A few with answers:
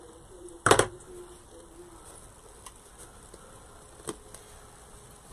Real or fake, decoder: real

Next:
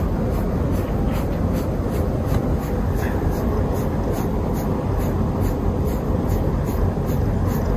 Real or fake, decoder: real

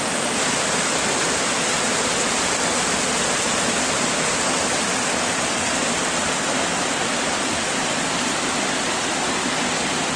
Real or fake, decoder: real